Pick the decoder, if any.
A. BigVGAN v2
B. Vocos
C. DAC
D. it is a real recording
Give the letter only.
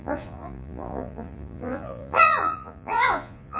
B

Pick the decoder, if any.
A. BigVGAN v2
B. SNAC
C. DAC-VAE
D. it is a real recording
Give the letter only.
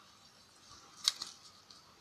D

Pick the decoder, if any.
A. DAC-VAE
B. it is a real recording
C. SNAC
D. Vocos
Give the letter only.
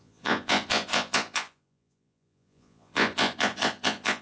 D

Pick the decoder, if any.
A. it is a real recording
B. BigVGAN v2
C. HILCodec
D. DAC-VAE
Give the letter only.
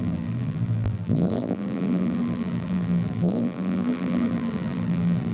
B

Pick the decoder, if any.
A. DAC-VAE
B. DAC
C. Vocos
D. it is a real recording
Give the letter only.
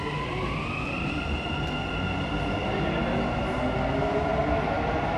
D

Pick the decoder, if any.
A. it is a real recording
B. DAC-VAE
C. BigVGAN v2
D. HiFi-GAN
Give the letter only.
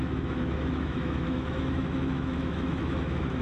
B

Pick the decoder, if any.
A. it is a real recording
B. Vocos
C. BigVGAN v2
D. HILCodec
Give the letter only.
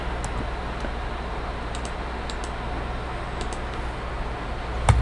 A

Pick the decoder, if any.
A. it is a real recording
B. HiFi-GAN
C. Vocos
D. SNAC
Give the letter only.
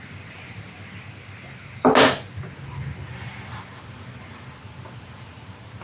A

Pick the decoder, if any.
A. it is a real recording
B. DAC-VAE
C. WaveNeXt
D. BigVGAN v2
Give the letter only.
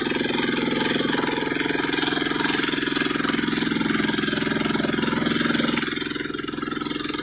A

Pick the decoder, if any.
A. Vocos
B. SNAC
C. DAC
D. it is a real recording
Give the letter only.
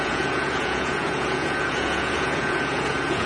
A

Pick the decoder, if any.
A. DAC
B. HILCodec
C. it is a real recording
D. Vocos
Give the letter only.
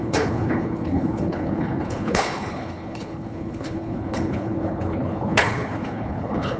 B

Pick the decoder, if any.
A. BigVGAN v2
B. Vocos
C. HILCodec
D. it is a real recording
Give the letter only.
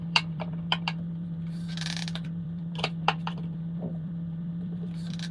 A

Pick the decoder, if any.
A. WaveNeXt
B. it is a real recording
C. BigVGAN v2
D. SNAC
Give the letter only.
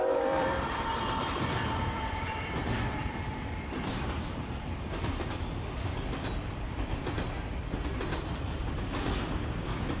C